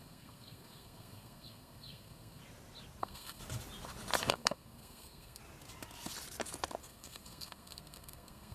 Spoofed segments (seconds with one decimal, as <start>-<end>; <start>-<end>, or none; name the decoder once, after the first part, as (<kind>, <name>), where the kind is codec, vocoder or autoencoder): 0.0-2.4 (codec, SNAC); 3.0-3.4; 4.3-5.4; 6.8-8.5